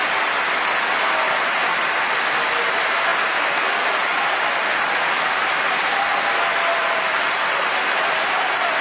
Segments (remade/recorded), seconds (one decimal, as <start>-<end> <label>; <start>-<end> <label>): 0.0-8.8 recorded